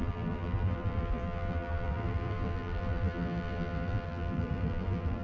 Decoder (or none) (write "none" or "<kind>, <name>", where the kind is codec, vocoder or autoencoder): vocoder, BigVGAN v2